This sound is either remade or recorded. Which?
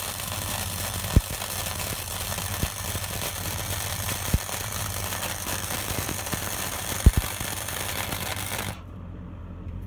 remade